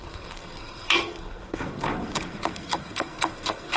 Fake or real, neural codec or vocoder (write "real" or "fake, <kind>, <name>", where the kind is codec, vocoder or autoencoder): fake, codec, SNAC